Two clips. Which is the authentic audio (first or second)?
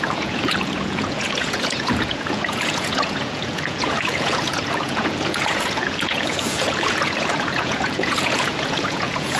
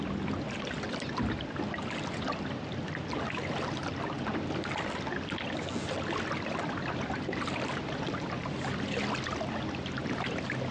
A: second